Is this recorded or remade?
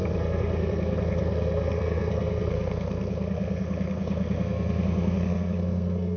remade